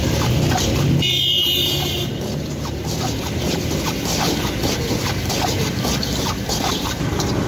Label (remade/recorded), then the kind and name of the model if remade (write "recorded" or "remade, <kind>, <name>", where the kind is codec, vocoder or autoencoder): remade, vocoder, BigVGAN v2